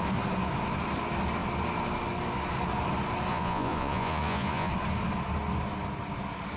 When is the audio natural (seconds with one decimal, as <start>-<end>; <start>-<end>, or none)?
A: 0.0-3.3; 4.7-6.6